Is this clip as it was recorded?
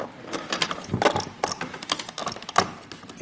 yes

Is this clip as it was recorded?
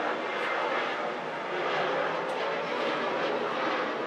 yes